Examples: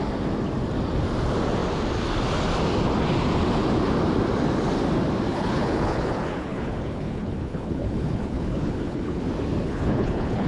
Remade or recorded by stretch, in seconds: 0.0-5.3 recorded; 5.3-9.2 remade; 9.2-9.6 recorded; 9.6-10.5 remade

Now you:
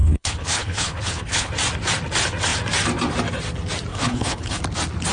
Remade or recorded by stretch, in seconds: 0.0-1.5 remade; 1.5-3.9 recorded; 3.9-4.6 remade; 4.6-5.1 recorded

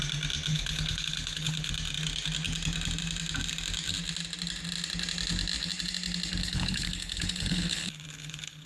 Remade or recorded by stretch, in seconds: 0.0-0.5 recorded; 0.5-1.7 remade; 1.7-6.4 recorded; 6.4-8.7 remade

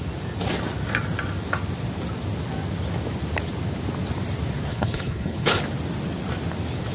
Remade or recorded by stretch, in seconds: 0.0-4.7 recorded; 4.7-5.6 remade; 5.6-6.9 recorded